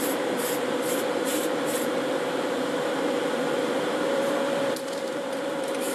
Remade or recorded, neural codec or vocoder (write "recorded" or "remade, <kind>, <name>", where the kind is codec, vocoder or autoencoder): remade, vocoder, BigVGAN v2